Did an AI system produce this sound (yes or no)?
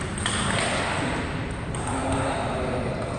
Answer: no